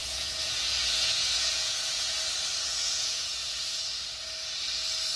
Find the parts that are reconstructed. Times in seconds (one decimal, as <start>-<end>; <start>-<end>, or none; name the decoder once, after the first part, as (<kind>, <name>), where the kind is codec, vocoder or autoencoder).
0.0-2.2 (vocoder, Vocos); 2.7-3.8

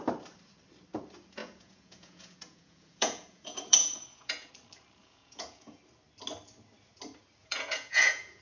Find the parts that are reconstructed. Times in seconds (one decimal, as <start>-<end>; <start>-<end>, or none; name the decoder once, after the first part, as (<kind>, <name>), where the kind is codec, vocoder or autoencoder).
1.4-4.5 (vocoder, Vocos); 5.0-5.8; 7.4-8.4

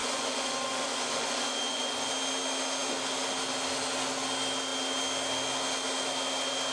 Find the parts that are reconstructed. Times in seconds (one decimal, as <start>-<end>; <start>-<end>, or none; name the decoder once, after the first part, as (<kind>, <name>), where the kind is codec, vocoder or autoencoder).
0.0-2.1 (vocoder, Vocos)

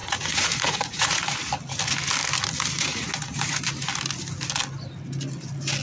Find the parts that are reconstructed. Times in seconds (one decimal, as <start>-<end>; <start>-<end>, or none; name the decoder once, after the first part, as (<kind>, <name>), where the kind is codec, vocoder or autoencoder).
0.0-1.5 (vocoder, Vocos); 2.9-3.6

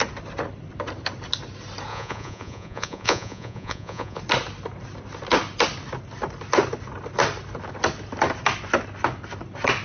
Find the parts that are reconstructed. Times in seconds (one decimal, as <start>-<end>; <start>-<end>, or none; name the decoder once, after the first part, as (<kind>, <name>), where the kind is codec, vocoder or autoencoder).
1.9-4.2 (vocoder, Vocos)

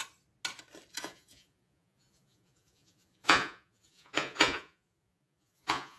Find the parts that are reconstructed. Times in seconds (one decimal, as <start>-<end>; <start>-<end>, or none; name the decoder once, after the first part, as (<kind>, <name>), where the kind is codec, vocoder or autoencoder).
1.0-6.0 (vocoder, Vocos)

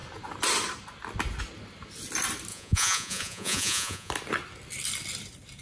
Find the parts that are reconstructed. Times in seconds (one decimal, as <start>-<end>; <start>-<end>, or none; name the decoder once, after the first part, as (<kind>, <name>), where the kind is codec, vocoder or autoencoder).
2.5-4.1 (vocoder, Vocos)

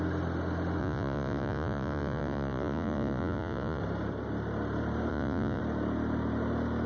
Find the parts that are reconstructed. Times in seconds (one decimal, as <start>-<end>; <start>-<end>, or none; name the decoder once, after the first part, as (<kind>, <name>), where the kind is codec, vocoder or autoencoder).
0.8-3.8 (vocoder, Vocos); 5.1-5.6